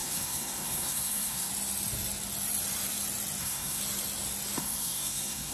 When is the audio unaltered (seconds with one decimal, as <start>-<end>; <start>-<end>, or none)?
1.5-3.4; 3.8-4.6